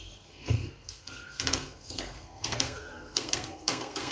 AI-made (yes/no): yes